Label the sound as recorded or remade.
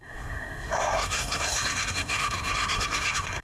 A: remade